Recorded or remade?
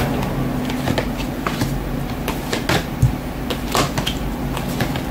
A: recorded